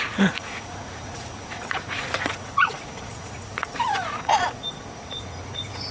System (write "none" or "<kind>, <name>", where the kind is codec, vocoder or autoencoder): vocoder, Vocos